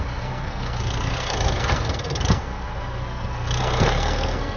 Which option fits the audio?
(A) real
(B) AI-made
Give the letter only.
B